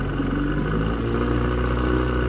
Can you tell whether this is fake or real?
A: real